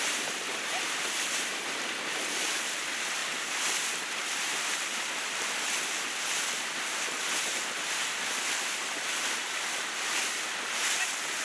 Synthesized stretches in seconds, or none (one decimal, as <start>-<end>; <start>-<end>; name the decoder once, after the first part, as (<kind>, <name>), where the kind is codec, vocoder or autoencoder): 0.0-3.2 (vocoder, BigVGAN v2); 3.9-11.4